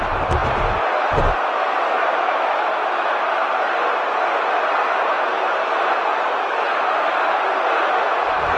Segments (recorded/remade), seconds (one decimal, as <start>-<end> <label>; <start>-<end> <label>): 0.0-2.1 recorded; 2.1-2.7 remade; 2.7-8.6 recorded